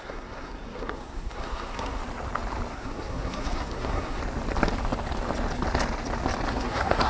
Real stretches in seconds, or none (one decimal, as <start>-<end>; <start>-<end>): 2.0-2.7; 4.2-6.5